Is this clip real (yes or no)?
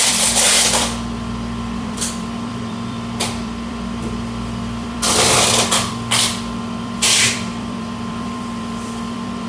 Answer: no